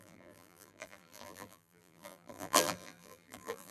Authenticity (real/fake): fake